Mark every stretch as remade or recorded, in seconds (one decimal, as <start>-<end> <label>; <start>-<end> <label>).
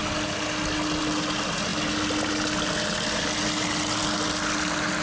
0.0-5.0 recorded